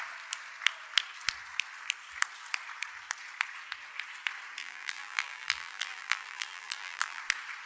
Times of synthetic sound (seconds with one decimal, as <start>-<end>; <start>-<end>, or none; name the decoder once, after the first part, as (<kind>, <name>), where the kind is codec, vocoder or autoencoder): 4.6-7.2 (vocoder, BigVGAN v2)